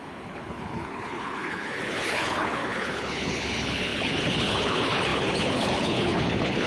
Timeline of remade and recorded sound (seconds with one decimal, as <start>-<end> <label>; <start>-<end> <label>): 0.0-6.7 remade